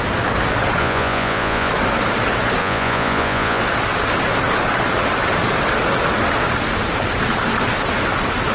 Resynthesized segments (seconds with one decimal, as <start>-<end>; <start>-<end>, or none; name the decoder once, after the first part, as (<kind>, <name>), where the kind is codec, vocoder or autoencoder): 0.8-1.7 (vocoder, Vocos); 2.6-3.6